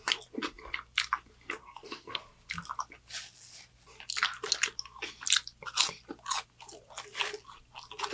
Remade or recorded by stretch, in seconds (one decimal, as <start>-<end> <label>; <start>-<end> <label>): 0.0-1.6 recorded; 1.6-2.2 remade; 2.2-8.1 recorded